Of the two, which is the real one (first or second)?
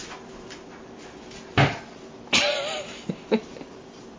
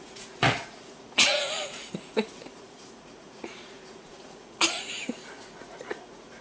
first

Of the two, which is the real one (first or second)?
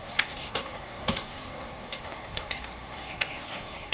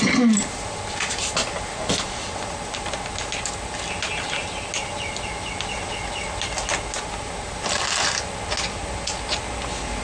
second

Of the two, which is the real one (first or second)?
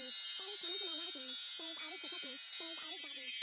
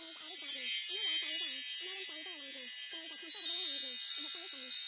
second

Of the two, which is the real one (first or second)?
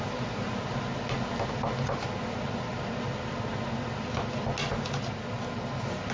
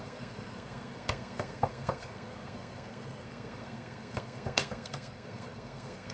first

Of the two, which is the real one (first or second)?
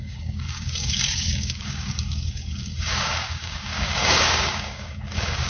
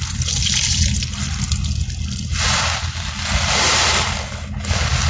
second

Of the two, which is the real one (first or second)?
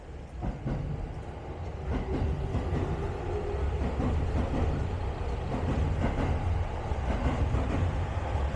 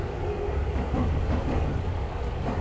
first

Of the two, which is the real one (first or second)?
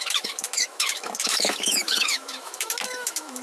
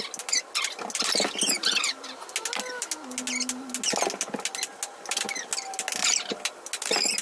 second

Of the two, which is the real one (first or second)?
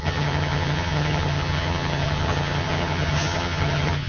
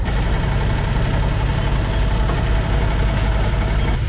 second